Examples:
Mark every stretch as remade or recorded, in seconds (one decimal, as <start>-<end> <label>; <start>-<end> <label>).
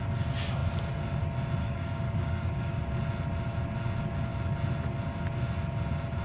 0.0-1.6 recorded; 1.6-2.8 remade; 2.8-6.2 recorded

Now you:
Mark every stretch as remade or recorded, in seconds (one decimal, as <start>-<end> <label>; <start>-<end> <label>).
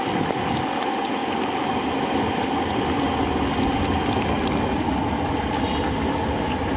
0.0-6.8 recorded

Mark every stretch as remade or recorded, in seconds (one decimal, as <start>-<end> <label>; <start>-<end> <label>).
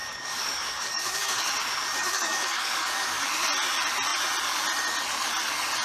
0.0-1.5 remade; 1.5-2.0 recorded; 2.0-3.3 remade; 3.3-5.8 recorded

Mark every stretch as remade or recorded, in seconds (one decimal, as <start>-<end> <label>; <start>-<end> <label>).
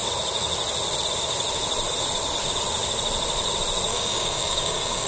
0.0-3.9 recorded; 3.9-5.1 remade